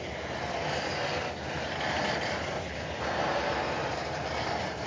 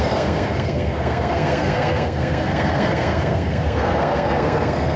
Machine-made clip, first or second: second